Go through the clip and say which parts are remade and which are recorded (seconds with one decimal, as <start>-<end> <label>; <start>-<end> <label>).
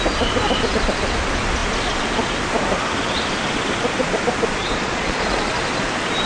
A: 0.0-4.6 recorded; 4.6-5.5 remade; 5.5-6.3 recorded